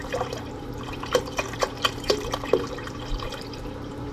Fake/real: fake